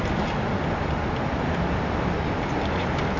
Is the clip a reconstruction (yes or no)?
no